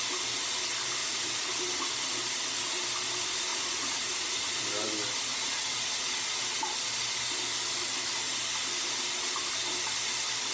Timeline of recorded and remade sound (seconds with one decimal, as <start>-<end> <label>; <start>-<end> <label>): 0.0-1.0 recorded; 1.0-1.5 remade; 1.5-3.5 recorded; 3.5-4.5 remade; 4.5-5.3 recorded; 5.3-6.1 remade; 6.1-10.5 recorded